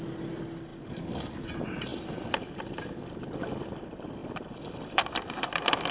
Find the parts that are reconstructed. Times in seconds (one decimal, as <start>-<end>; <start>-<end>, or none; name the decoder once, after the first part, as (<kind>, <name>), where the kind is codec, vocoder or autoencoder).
1.9-2.9 (vocoder, BigVGAN v2); 4.2-5.9